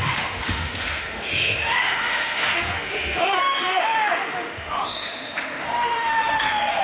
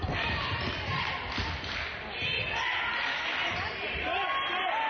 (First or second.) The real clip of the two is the second